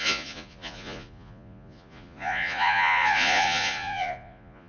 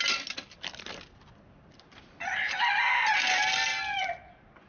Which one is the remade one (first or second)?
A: first